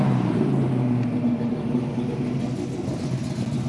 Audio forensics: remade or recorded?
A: recorded